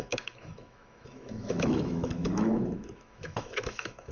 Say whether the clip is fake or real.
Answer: fake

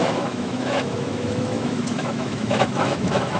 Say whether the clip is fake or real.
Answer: fake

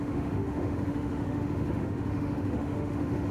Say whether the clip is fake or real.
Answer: fake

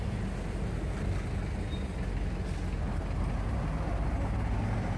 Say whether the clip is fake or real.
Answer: real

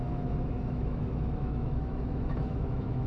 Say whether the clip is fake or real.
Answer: fake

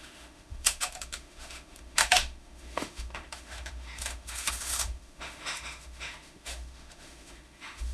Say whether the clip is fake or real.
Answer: fake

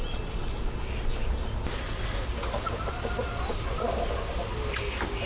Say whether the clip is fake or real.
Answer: real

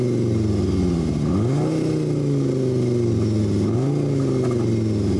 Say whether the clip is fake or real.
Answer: real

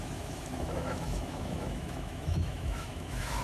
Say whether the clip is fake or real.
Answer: fake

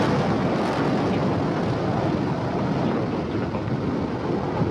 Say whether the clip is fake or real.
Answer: real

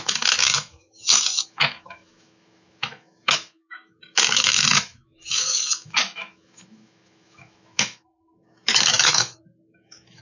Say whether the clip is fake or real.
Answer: fake